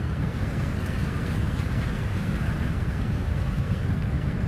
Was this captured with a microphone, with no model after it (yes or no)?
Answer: no